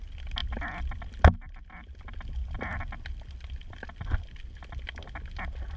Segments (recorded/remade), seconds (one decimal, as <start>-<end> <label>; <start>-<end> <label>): 0.0-0.4 recorded; 0.4-1.1 remade; 1.1-2.4 recorded; 2.4-4.6 remade; 4.6-5.8 recorded